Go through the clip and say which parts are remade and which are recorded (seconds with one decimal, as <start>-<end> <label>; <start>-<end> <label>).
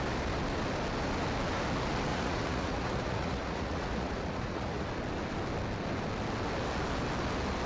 0.0-2.1 recorded; 2.1-4.9 remade; 4.9-7.7 recorded